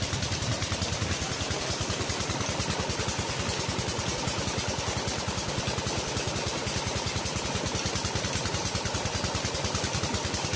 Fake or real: real